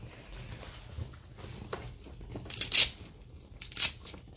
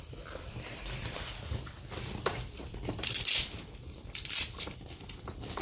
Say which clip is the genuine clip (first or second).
first